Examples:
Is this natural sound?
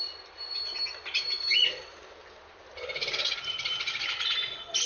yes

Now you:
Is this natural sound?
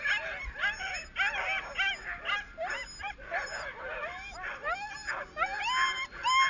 yes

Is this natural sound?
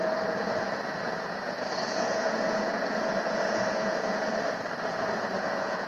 no